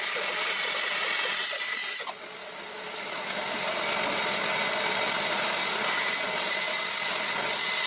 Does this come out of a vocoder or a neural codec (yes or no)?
no